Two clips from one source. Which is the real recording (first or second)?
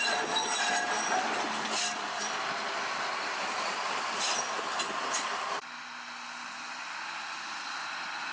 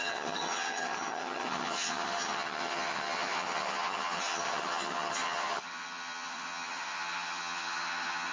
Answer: first